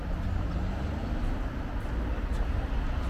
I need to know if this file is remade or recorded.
recorded